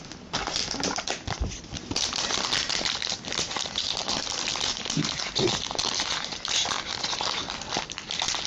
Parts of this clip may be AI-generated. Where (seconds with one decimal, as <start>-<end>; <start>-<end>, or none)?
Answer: 4.0-5.2